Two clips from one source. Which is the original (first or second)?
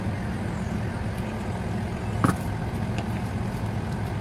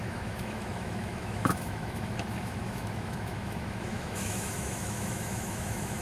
first